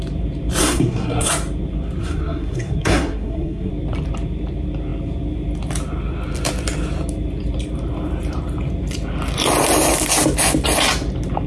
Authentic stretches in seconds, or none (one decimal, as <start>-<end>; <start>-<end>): 0.0-0.6; 1.3-2.0; 3.7-11.5